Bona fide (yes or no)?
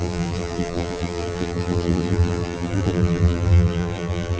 no